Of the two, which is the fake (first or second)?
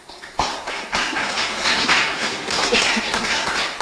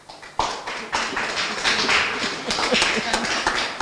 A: first